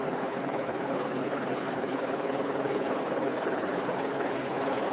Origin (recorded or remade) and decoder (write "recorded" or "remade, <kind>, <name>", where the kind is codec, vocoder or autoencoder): remade, codec, HILCodec